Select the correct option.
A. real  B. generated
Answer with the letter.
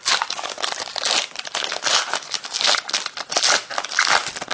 A